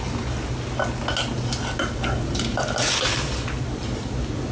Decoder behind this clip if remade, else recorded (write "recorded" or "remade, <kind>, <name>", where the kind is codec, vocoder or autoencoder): recorded